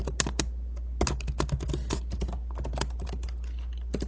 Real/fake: real